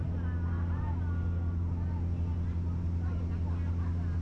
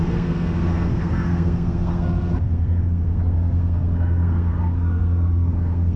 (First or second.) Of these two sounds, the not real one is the second